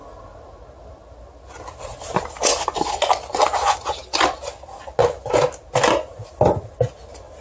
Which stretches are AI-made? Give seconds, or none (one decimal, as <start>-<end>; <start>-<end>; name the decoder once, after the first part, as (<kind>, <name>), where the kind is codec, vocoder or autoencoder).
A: none